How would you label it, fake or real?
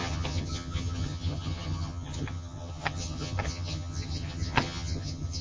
fake